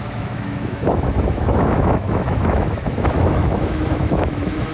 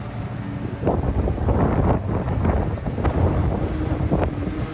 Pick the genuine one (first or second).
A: second